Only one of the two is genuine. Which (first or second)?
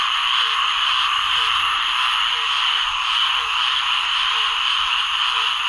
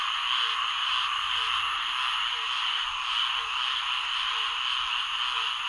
second